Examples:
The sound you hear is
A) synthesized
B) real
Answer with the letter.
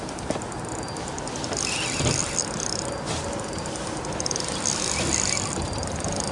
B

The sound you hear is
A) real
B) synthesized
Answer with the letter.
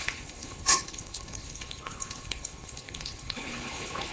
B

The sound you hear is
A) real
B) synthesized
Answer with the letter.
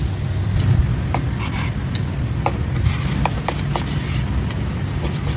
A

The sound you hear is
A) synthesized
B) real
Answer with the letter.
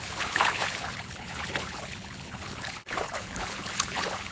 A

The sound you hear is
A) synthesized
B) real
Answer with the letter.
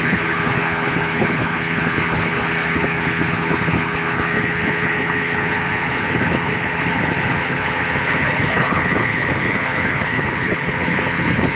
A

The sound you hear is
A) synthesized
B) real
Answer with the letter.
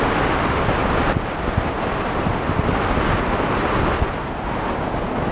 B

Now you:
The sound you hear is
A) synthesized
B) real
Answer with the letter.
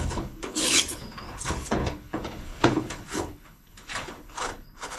A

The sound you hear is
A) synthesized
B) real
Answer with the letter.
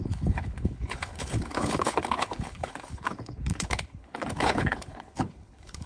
A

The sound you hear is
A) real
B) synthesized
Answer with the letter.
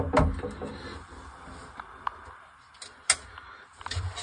A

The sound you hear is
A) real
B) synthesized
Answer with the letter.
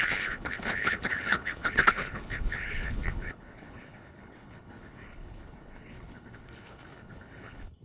B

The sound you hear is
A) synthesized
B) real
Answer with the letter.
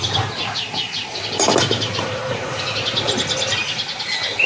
B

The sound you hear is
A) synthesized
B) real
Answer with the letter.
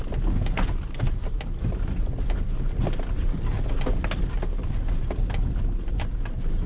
B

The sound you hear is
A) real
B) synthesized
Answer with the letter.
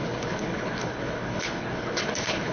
B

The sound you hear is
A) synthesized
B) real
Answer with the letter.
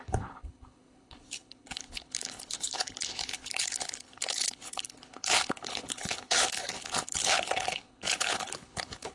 A